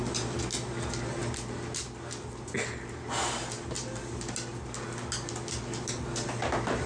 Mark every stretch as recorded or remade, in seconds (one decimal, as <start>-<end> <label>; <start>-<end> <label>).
0.0-6.9 recorded